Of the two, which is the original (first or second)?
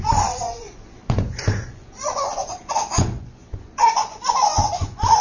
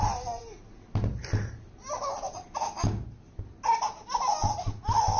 second